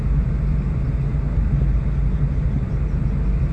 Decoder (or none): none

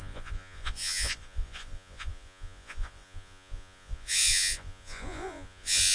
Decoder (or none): vocoder, Vocos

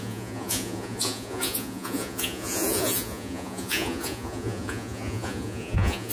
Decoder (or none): vocoder, Vocos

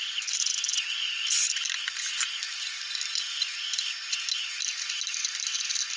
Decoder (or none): none